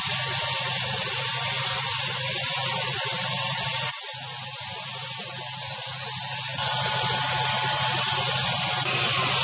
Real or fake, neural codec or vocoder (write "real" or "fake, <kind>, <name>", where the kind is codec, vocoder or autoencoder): real